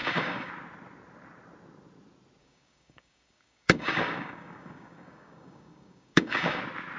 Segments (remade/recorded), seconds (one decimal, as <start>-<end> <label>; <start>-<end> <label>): 0.0-0.5 remade; 0.5-2.4 recorded; 2.4-6.6 remade; 6.6-7.0 recorded

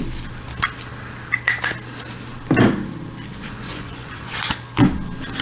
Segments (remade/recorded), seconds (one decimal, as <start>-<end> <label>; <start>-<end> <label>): 0.0-3.3 recorded; 3.3-4.4 remade; 4.4-5.4 recorded

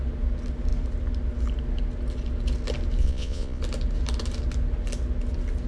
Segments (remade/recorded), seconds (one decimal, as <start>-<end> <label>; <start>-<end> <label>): 0.0-3.0 recorded; 3.0-3.6 remade; 3.6-5.7 recorded

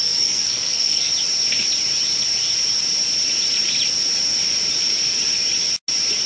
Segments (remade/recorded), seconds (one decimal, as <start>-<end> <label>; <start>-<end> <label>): 0.0-1.1 remade; 1.1-6.3 recorded

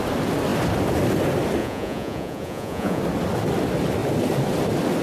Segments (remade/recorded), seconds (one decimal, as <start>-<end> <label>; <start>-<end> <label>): 0.0-1.6 recorded; 1.6-3.0 remade; 3.0-5.0 recorded

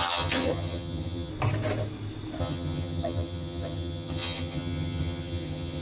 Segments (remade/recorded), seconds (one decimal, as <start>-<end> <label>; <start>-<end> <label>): 0.0-1.3 remade; 1.3-2.4 recorded; 2.4-5.8 remade